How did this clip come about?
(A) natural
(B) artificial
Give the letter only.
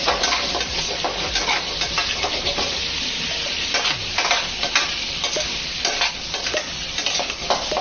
A